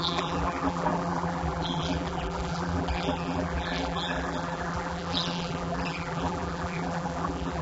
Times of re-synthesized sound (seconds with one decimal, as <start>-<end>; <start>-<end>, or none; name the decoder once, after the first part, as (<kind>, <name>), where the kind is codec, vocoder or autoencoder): 0.0-7.6 (vocoder, BigVGAN v2)